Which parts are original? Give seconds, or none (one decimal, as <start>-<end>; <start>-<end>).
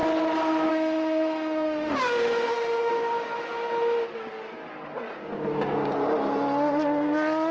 0.0-0.7; 1.9-2.5; 2.9-7.5